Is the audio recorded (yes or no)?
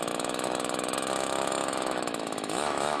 no